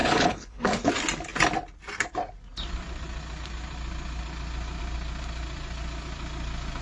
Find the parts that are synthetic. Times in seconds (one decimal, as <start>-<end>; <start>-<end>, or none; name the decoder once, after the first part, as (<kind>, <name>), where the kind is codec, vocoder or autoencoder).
0.0-0.9 (codec, HILCodec)